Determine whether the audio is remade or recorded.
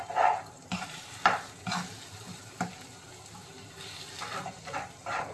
recorded